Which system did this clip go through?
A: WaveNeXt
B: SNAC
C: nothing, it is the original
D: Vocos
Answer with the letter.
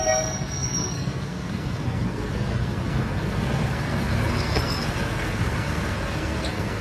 B